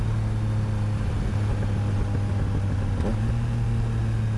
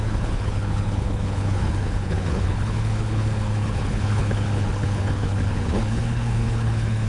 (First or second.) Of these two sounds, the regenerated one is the second